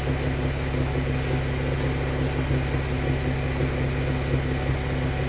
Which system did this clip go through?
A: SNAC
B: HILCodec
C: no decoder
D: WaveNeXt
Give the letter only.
C